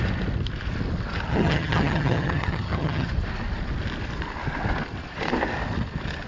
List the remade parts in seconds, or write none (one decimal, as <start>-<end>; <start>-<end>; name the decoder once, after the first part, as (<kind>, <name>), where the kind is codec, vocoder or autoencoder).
1.3-3.1 (vocoder, HiFi-GAN)